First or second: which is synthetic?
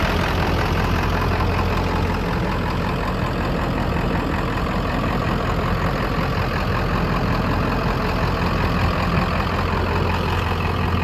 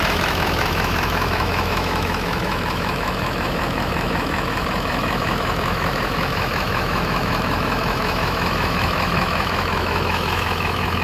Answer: second